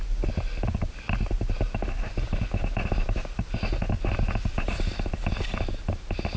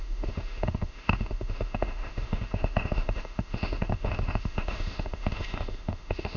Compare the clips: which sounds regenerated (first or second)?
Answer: second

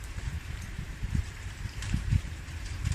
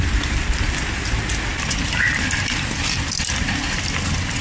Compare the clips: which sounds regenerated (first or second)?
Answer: first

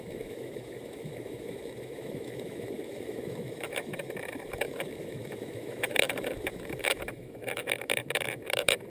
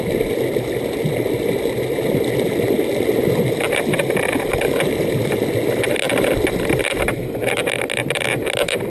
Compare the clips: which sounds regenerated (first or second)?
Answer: first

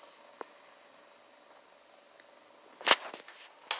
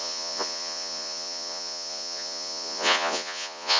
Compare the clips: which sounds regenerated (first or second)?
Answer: second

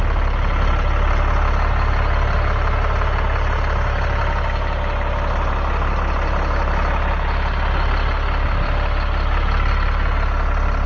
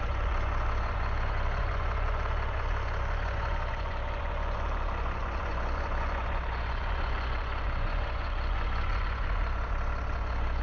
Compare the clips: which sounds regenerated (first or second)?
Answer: second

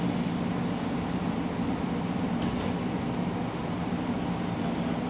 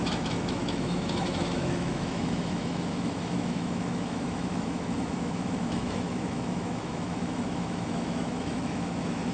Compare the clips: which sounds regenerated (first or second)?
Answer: second